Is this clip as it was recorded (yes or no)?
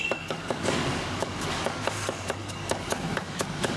no